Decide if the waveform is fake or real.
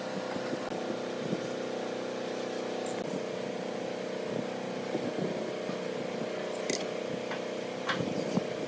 real